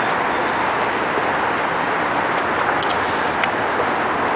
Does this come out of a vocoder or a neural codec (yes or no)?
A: no